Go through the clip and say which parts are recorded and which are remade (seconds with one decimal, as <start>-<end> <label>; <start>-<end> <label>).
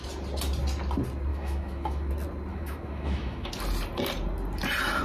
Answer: 0.0-1.3 recorded; 1.3-2.1 remade; 2.1-2.5 recorded; 2.5-3.5 remade; 3.5-5.0 recorded